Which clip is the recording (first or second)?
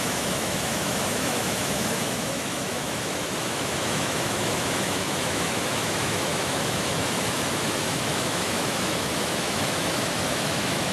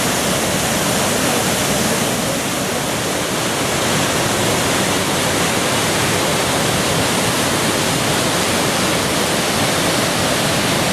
second